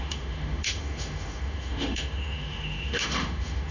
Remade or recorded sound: remade